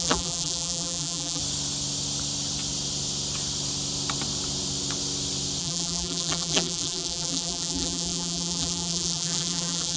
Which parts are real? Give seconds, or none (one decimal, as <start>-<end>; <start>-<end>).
1.4-5.6